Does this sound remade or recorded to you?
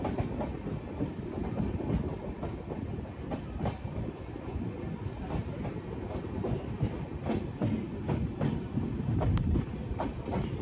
recorded